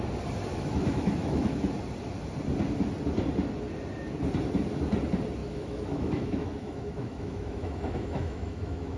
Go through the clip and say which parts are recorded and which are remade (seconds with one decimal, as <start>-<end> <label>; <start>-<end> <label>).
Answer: 0.0-0.5 recorded; 0.5-1.6 remade; 1.6-5.4 recorded; 5.4-9.0 remade

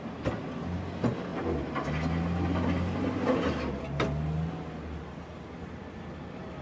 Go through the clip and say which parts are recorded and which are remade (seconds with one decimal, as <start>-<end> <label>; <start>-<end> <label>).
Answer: 0.0-6.6 recorded

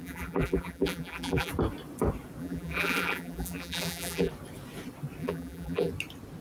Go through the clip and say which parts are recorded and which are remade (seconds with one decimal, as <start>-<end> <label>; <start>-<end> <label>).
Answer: 0.0-1.5 remade; 1.5-2.4 recorded; 2.4-4.3 remade; 4.3-5.2 recorded; 5.2-5.9 remade; 5.9-6.4 recorded

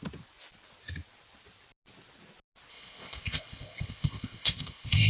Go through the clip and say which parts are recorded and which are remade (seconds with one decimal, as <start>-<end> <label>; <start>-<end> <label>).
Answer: 0.0-2.7 recorded; 2.7-5.1 remade